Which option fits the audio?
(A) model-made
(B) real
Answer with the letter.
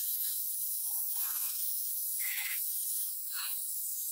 A